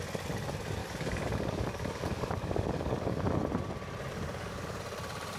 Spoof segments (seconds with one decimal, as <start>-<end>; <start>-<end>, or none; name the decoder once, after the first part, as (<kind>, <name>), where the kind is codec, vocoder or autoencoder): 0.8-3.4 (codec, DAC); 4.1-4.8